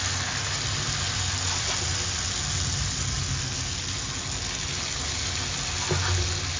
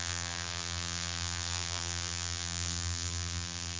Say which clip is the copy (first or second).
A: second